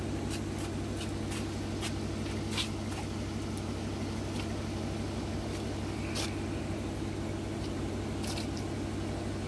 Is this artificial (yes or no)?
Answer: no